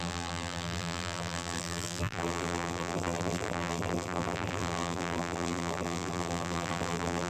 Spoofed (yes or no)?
yes